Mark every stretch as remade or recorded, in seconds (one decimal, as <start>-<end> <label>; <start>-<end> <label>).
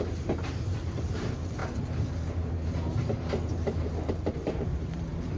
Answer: 0.0-1.6 remade; 1.6-3.5 recorded; 3.5-5.4 remade